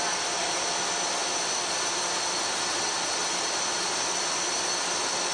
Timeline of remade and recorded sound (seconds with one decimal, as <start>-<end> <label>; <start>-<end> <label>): 0.0-5.3 recorded